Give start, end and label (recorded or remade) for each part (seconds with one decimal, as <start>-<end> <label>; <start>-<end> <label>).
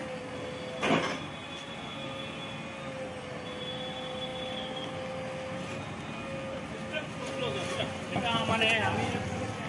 0.0-9.7 recorded